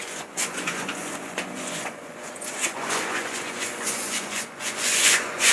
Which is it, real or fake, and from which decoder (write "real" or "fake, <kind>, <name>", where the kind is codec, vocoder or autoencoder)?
fake, vocoder, Vocos